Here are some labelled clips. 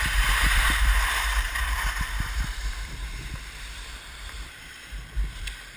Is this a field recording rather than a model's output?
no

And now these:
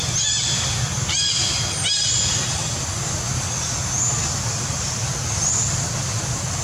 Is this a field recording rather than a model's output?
yes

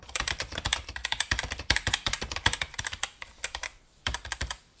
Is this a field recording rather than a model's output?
no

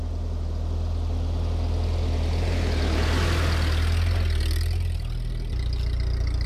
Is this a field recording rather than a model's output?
yes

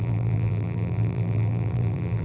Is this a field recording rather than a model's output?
no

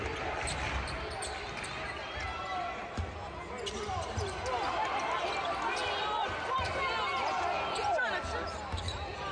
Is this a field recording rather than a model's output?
yes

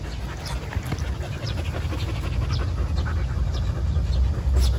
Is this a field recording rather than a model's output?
yes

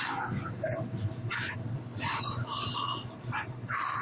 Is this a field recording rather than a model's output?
no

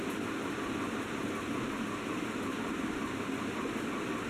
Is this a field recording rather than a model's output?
yes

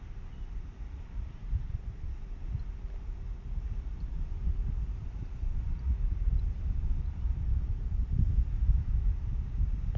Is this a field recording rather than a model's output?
no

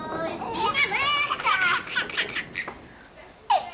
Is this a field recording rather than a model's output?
yes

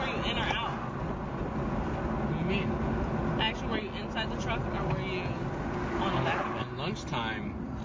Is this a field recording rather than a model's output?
yes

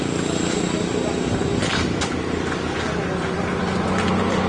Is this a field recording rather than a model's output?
yes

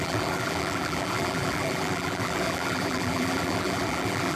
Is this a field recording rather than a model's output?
no